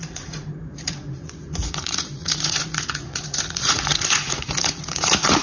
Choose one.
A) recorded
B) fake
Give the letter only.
B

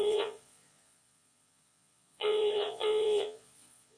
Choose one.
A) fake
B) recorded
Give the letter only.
A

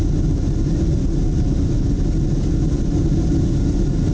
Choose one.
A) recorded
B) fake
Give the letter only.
A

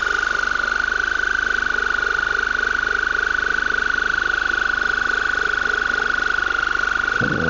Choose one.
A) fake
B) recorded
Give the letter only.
B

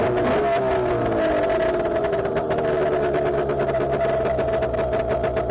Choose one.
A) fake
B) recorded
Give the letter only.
B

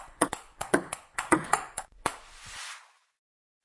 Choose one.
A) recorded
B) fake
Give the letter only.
B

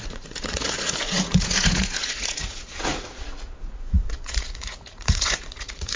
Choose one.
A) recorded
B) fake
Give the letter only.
B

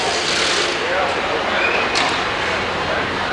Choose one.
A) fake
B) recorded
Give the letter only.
B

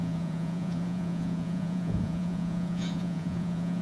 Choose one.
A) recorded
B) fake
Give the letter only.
B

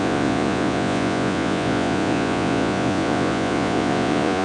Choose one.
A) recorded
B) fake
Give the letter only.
B